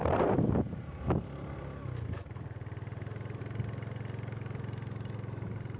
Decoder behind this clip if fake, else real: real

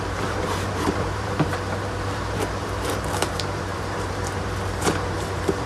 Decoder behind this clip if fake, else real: fake, vocoder, BigVGAN v2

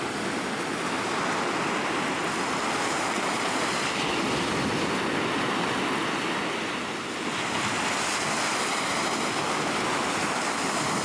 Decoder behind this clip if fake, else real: real